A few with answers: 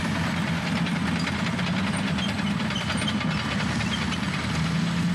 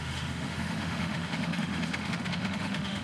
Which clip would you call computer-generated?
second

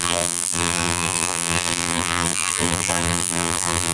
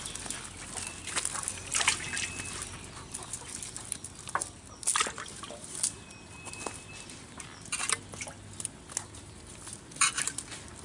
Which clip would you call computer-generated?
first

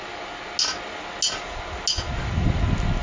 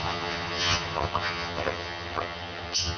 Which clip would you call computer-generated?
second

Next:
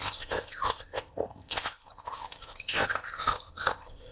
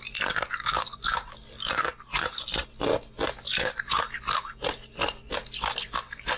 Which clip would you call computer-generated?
first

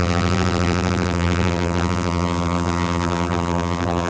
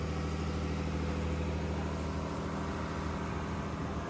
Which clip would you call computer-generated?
first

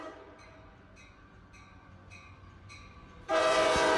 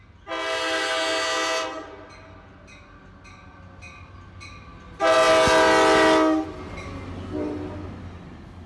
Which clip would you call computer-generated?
first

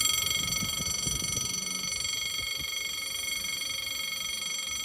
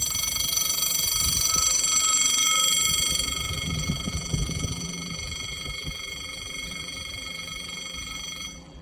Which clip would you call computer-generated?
second